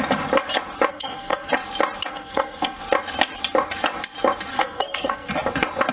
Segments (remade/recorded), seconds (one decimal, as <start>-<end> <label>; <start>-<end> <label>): 0.0-0.9 recorded; 0.9-1.5 remade; 1.5-2.1 recorded; 2.1-2.8 remade; 2.8-4.5 recorded; 4.5-5.3 remade; 5.3-5.9 recorded